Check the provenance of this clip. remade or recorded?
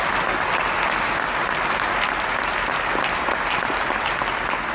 recorded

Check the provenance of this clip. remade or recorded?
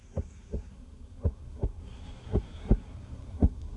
remade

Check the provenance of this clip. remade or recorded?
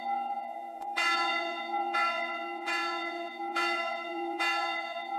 remade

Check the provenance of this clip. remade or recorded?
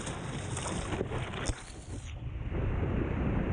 recorded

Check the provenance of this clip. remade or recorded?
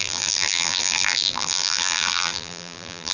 remade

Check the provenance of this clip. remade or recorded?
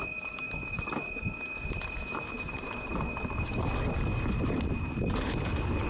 recorded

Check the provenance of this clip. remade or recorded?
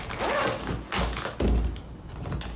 recorded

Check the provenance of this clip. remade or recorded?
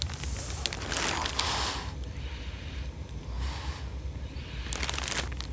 recorded